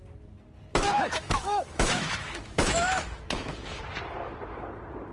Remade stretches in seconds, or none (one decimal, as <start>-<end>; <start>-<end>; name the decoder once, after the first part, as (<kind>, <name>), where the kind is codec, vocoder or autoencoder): 0.7-3.8 (autoencoder, DAC-VAE)

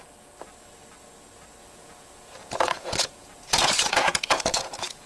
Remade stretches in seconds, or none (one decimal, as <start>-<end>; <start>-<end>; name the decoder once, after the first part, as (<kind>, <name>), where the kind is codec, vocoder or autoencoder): 1.6-5.1 (vocoder, Vocos)